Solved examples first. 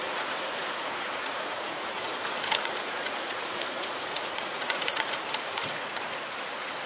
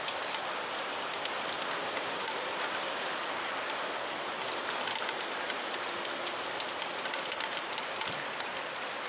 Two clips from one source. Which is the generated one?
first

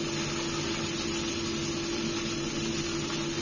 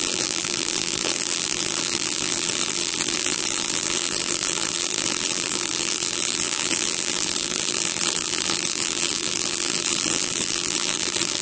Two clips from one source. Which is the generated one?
second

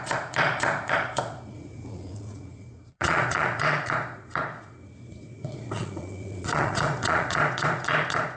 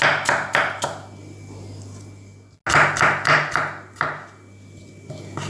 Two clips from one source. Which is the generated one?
first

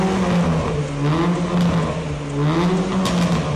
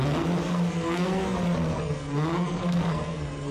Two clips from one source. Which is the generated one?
second